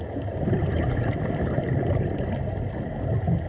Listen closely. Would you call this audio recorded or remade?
recorded